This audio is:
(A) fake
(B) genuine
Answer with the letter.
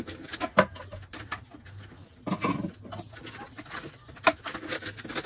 B